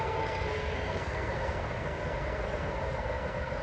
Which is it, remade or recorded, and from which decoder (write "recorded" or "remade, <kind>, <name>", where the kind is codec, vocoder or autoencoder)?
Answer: remade, codec, SNAC